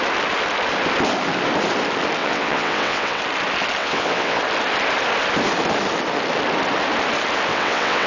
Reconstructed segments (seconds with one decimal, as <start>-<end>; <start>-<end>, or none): 2.2-3.2; 3.8-4.4; 7.5-8.1